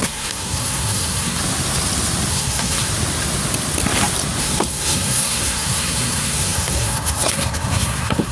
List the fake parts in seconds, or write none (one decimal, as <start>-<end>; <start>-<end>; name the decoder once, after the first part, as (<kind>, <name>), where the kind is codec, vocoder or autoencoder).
0.0-1.4 (codec, SNAC); 2.3-2.9; 4.4-8.3

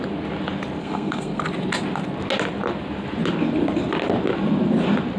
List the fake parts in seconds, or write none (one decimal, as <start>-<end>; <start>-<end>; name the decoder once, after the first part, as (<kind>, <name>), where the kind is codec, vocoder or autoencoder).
0.8-1.4 (codec, SNAC)

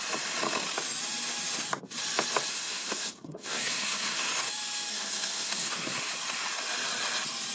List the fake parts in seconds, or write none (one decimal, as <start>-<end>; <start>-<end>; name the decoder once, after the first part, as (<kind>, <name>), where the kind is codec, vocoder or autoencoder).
2.5-4.3 (codec, SNAC); 4.9-6.1